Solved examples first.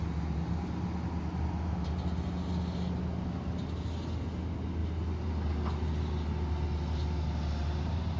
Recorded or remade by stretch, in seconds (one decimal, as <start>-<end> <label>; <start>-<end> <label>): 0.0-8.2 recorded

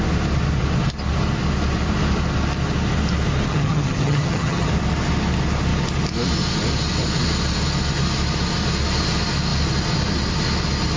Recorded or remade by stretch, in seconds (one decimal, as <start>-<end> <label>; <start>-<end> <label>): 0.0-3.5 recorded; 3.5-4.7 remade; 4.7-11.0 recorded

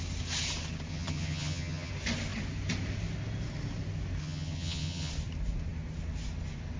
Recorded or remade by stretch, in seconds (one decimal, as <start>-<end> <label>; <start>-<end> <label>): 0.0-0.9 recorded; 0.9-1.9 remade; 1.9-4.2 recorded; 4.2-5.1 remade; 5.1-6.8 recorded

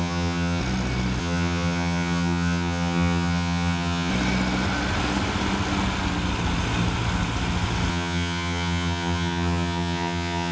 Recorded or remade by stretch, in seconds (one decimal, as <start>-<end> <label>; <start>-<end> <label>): 0.0-0.6 remade; 0.6-1.2 recorded; 1.2-4.1 remade; 4.1-7.9 recorded; 7.9-10.5 remade

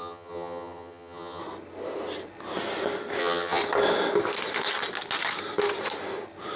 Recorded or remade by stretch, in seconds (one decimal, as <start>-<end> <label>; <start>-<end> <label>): 0.0-1.4 remade; 1.4-3.2 recorded; 3.2-3.6 remade; 3.6-6.6 recorded

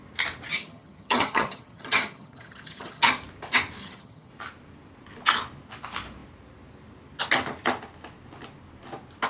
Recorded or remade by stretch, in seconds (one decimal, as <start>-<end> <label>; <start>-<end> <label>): 0.0-0.5 recorded; 0.5-3.1 remade; 3.1-3.8 recorded; 3.8-4.3 remade; 4.3-9.3 recorded

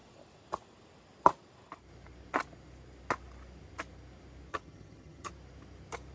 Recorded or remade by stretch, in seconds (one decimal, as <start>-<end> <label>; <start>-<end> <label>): 0.0-4.5 recorded; 4.5-5.3 remade; 5.3-6.1 recorded

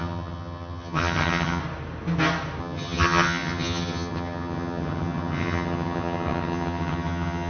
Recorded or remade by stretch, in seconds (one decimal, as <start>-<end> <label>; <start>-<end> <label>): 0.0-1.6 remade; 1.6-2.6 recorded; 2.6-7.5 remade